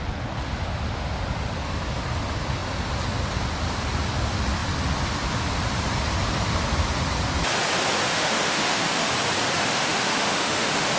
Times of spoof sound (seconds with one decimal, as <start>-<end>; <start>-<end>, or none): 8.1-9.1; 9.6-11.0